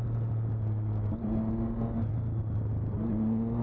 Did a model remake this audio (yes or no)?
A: no